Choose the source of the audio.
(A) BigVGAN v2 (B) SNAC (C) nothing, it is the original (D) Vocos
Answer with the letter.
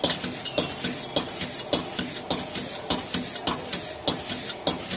C